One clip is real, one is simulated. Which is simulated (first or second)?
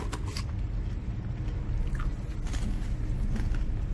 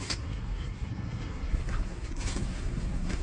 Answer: second